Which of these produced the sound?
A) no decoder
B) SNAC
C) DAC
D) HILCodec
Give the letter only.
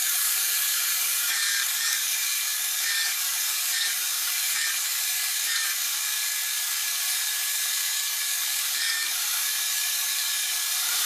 C